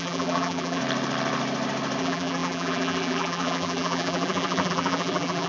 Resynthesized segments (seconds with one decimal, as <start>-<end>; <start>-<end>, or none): 0.0-0.8; 2.0-5.5